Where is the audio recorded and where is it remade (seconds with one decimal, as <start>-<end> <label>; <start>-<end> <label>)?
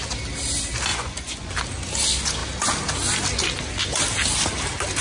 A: 0.0-0.9 recorded; 0.9-1.5 remade; 1.5-5.0 recorded